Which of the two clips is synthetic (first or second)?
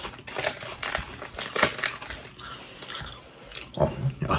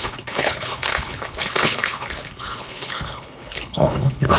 second